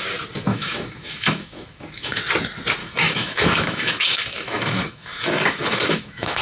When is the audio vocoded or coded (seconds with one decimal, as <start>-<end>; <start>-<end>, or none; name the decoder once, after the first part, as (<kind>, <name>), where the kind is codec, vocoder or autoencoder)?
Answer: 0.5-2.2 (autoencoder, DAC-VAE); 2.8-6.4